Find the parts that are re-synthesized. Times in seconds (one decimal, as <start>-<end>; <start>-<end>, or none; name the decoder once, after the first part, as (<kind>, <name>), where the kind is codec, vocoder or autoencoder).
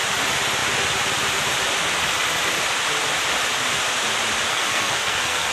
4.5-5.5 (codec, SNAC)